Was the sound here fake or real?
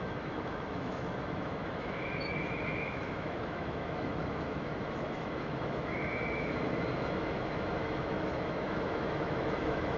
fake